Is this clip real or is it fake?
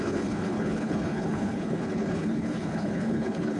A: fake